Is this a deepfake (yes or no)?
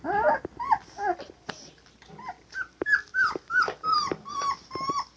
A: no